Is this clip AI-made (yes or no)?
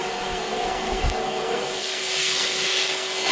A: yes